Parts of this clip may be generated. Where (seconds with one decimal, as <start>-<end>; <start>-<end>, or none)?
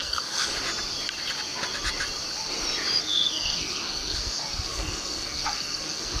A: 0.0-0.5; 3.0-6.2